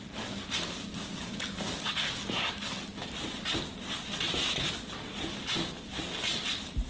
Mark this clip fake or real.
real